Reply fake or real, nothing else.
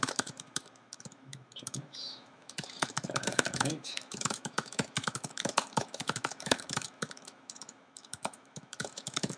fake